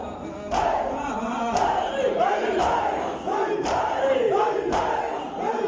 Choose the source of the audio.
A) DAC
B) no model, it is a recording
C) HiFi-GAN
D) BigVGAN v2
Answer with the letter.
B